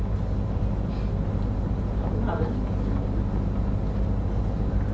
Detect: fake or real real